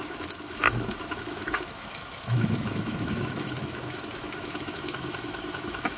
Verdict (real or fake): fake